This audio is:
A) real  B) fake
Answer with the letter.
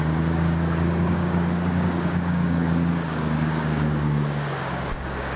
B